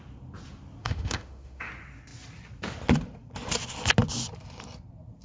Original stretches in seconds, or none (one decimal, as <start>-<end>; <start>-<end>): 0.0-0.8; 1.7-5.2